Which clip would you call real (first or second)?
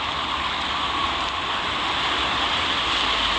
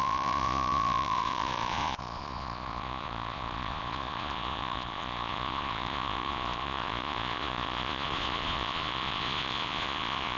first